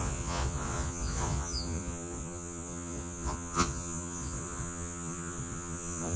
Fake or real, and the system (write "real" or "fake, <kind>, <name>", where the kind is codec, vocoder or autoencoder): fake, vocoder, Vocos